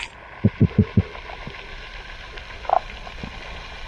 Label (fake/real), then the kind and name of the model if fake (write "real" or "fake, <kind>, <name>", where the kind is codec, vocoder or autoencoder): real